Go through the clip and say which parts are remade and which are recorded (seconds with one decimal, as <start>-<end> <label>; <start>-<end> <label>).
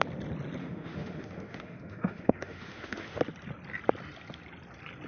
0.0-0.6 recorded; 0.6-3.2 remade; 3.2-5.1 recorded